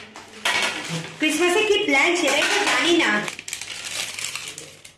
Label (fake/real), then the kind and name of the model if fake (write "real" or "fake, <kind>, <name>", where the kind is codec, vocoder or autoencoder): real